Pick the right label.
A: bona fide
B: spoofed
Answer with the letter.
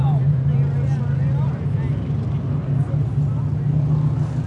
A